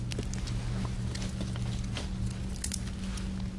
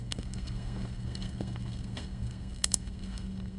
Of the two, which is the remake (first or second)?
second